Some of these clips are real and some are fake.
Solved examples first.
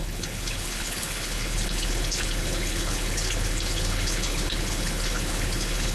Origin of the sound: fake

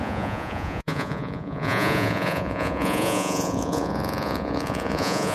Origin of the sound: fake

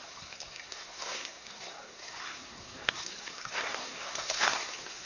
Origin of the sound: fake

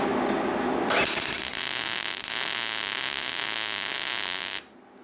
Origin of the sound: real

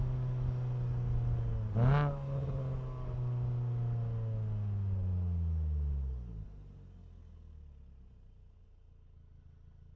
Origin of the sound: real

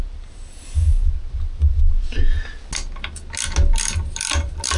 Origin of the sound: real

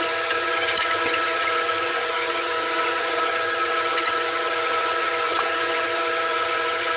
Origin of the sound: fake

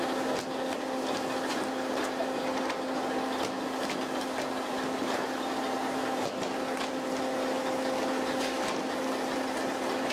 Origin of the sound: real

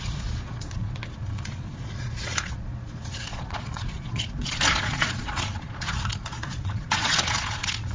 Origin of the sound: fake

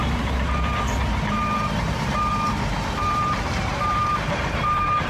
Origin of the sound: fake